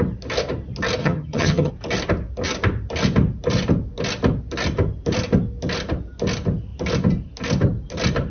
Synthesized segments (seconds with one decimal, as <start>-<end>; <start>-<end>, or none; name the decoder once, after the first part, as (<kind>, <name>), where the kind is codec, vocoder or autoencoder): 1.0-1.7 (vocoder, HiFi-GAN)